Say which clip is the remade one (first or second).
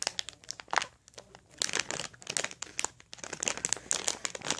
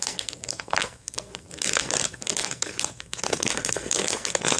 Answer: second